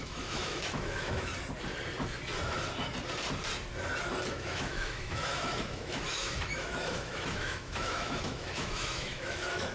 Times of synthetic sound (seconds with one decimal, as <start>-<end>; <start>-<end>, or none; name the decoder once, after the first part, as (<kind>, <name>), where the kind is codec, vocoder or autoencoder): 0.0-1.3 (autoencoder, DAC-VAE); 4.3-9.7